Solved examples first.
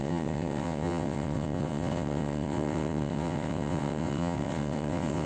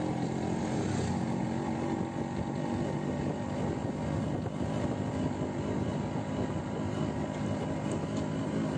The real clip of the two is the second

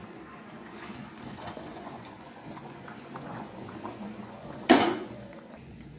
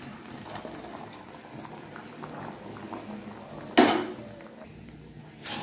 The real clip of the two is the second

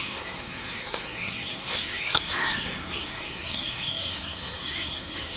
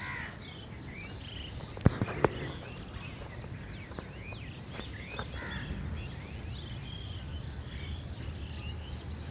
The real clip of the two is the second